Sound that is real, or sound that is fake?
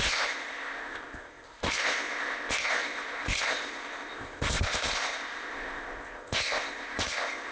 fake